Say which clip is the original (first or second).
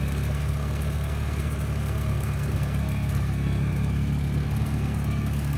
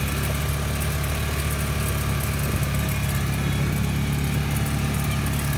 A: second